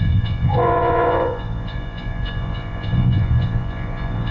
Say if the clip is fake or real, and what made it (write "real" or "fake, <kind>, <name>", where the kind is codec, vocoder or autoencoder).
fake, vocoder, Vocos